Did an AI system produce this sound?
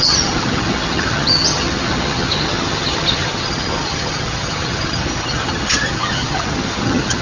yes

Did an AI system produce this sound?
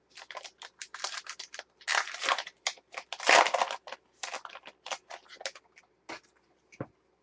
no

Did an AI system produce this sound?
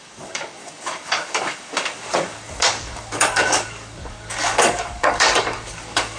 yes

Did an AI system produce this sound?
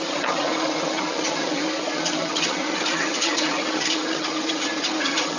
yes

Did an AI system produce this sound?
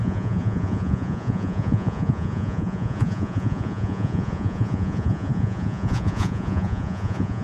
yes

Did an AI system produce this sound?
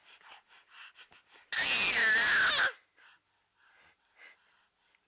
no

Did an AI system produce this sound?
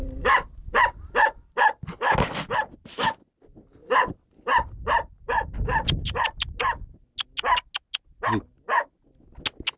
no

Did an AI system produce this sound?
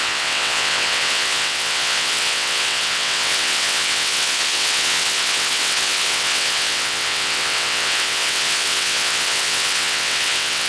yes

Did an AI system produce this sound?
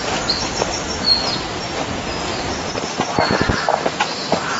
no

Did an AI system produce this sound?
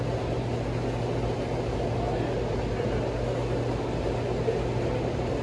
no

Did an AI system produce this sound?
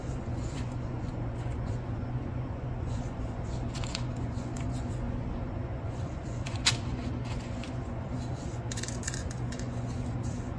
yes